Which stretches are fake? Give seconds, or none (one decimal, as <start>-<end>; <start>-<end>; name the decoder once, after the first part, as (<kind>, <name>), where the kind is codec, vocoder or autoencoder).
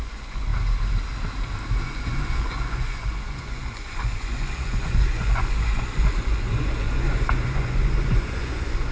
0.0-0.5 (vocoder, Vocos); 1.8-8.9